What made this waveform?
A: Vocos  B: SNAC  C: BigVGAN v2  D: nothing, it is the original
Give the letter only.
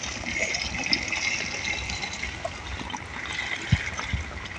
D